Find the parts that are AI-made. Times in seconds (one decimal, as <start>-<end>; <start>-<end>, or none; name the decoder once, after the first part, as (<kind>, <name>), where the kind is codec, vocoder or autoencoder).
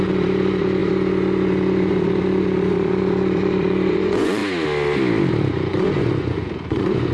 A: 0.0-4.4 (vocoder, Vocos); 5.5-7.1